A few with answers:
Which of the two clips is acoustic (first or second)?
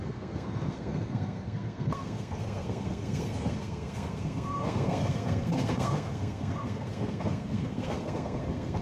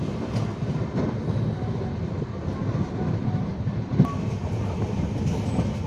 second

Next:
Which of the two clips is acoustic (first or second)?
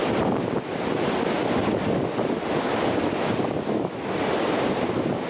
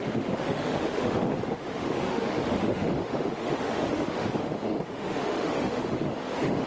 first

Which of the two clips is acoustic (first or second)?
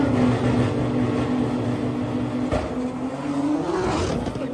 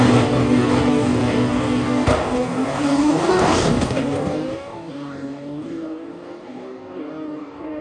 first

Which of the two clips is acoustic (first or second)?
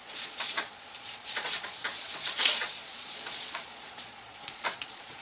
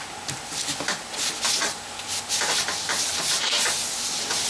second